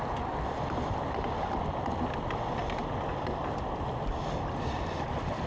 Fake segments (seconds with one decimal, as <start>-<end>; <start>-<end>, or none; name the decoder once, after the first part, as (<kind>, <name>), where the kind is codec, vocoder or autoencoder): none